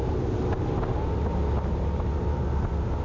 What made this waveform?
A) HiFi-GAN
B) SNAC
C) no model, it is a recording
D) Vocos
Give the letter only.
C